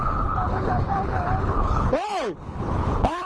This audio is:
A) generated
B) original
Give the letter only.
A